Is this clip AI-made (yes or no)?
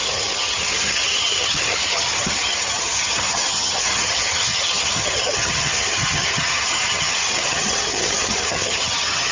yes